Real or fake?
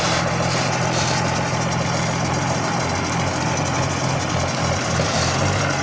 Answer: real